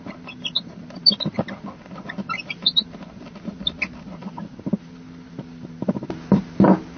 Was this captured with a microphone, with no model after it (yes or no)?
yes